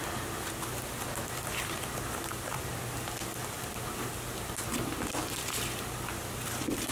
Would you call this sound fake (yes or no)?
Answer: no